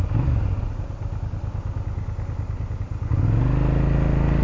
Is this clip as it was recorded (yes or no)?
yes